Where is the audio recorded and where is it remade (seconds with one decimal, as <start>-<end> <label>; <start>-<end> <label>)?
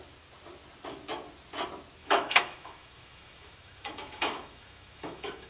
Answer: 0.0-2.0 recorded; 2.0-5.5 remade